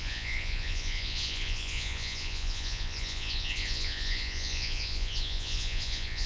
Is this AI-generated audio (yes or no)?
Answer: yes